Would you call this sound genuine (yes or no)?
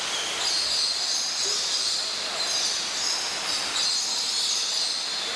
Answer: yes